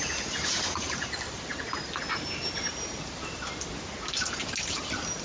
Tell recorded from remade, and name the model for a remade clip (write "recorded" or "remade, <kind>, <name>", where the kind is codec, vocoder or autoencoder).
recorded